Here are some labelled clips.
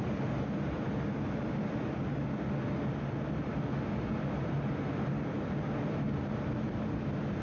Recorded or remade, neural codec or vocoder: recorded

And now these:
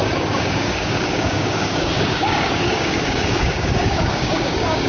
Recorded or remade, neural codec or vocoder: remade, codec, DAC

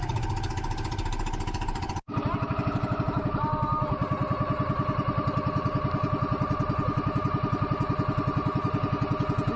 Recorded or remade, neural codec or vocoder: recorded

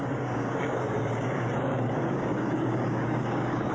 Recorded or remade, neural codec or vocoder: remade, codec, DAC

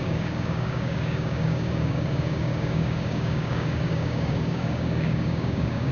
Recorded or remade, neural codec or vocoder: remade, codec, DAC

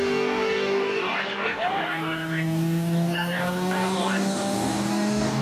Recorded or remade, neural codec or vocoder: remade, codec, DAC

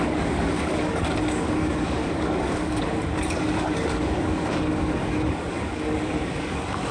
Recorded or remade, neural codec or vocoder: remade, codec, DAC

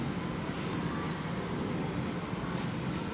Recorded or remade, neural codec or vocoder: recorded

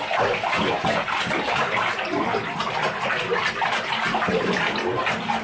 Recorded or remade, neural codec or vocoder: recorded